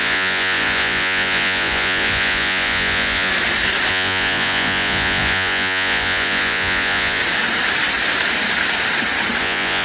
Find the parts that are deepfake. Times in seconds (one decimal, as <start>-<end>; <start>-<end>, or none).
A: 0.0-3.3; 3.9-7.2; 9.4-9.8